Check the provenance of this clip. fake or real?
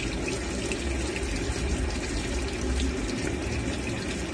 real